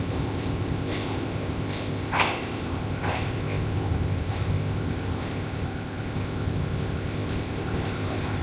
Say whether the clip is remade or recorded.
remade